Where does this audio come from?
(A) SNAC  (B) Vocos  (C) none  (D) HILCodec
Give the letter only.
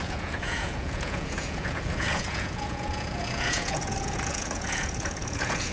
B